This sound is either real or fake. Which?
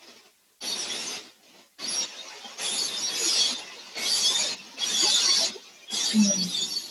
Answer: real